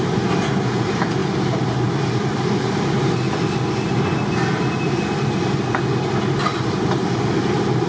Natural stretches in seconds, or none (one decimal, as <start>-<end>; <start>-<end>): 0.0-7.9